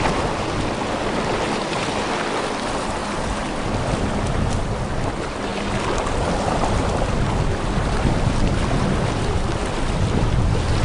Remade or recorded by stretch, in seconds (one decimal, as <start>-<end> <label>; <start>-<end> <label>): 0.0-10.8 recorded